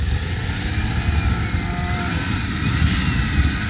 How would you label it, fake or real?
real